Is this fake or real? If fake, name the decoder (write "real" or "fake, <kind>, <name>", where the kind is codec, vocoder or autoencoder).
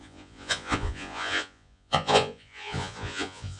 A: fake, vocoder, Vocos